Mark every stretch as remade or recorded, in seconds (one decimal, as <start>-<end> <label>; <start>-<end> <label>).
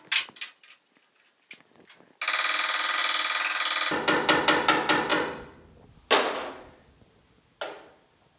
0.0-8.4 recorded